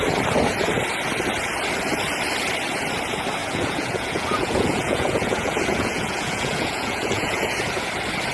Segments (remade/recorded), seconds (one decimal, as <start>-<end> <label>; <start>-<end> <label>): 0.0-3.4 recorded; 3.4-7.9 remade; 7.9-8.3 recorded